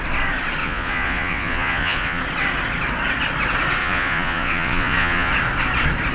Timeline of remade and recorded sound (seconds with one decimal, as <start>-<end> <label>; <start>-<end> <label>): 0.0-0.6 recorded; 0.6-2.2 remade; 2.2-3.8 recorded; 3.8-5.3 remade; 5.3-6.1 recorded